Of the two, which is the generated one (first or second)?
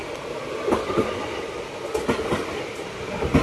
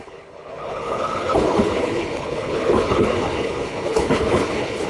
second